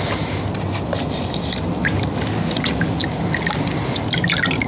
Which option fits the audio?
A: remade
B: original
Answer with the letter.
B